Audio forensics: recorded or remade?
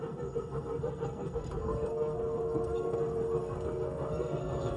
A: remade